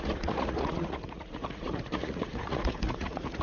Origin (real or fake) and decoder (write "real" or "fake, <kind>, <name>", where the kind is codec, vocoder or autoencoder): fake, vocoder, Vocos